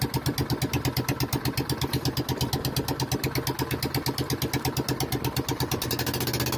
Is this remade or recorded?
recorded